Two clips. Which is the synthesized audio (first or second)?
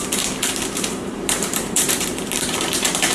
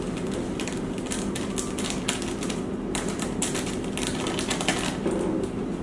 first